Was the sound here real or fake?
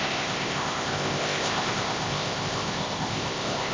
fake